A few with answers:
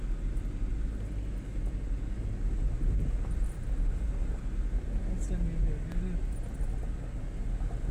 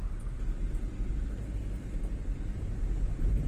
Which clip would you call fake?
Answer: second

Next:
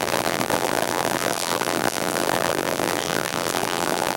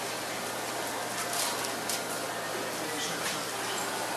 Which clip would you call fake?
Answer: first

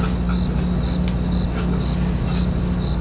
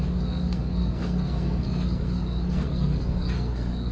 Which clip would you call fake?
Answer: second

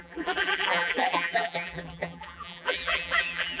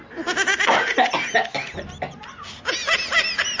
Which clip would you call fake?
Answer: first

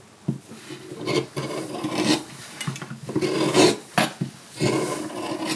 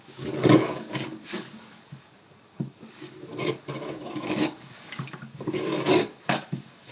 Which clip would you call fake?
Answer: second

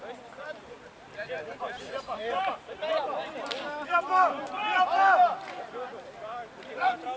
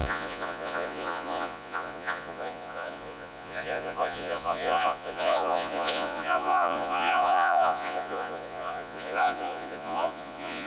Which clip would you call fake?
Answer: second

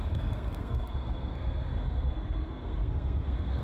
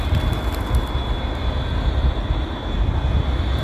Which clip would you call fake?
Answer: first